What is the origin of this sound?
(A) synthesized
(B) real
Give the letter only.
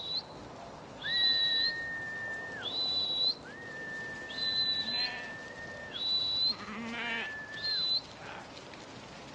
B